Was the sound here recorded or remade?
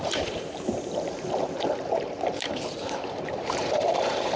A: remade